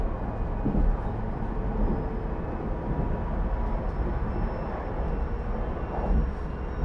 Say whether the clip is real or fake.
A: real